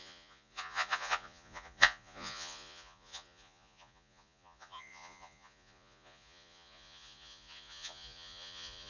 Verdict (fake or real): fake